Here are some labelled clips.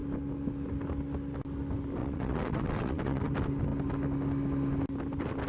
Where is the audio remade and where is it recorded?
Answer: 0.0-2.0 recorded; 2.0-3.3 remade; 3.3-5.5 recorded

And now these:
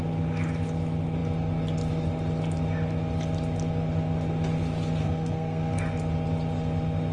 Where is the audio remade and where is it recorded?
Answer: 0.0-5.0 recorded; 5.0-5.8 remade; 5.8-7.1 recorded

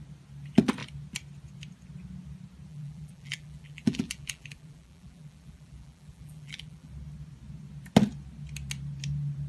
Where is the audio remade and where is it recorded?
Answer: 0.0-2.7 recorded; 2.7-6.9 remade; 6.9-9.5 recorded

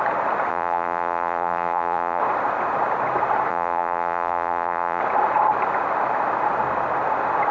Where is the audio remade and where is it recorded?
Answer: 0.0-0.5 recorded; 0.5-2.2 remade; 2.2-3.5 recorded; 3.5-5.0 remade; 5.0-7.5 recorded